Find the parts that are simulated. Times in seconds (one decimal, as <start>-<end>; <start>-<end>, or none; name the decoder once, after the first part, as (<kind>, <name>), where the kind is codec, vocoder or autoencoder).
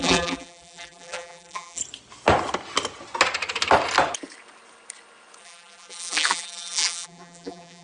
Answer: 0.0-1.8 (vocoder, BigVGAN v2); 5.4-7.8